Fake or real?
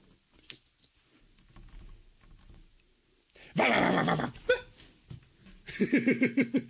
real